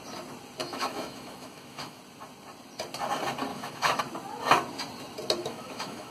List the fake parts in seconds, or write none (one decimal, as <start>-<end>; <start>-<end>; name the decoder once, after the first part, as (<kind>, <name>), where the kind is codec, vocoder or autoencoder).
0.6-2.0 (autoencoder, DAC-VAE); 3.5-4.0; 5.4-6.1